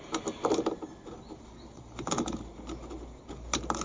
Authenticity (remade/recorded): recorded